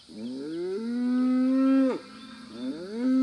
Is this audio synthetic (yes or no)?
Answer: no